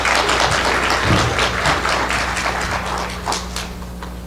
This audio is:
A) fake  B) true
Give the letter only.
B